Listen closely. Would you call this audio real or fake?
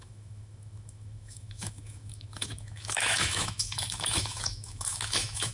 fake